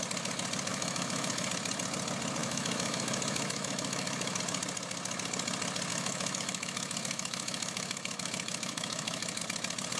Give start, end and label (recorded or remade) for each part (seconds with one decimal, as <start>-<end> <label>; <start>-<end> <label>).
0.0-0.7 recorded; 0.7-1.5 remade; 1.5-2.4 recorded; 2.4-4.4 remade; 4.4-5.9 recorded; 5.9-9.4 remade; 9.4-10.0 recorded